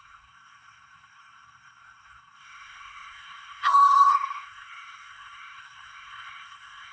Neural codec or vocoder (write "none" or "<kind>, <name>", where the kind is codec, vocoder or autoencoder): codec, SNAC